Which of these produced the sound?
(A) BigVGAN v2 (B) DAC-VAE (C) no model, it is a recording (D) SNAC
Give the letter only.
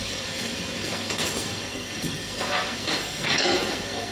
D